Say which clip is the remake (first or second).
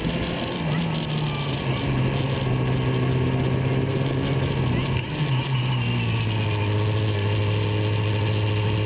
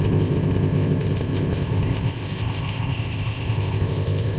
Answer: second